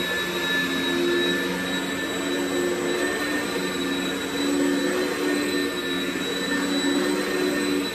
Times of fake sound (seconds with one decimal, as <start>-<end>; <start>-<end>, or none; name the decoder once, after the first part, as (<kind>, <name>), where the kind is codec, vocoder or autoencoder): 3.0-3.6 (vocoder, BigVGAN v2)